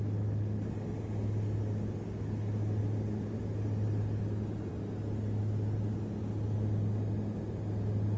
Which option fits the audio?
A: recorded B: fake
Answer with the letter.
A